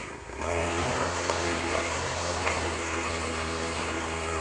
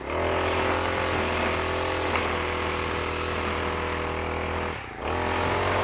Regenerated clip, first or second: first